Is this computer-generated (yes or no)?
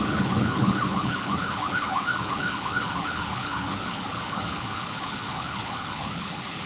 yes